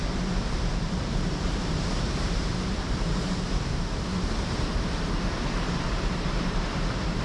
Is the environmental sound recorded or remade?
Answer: remade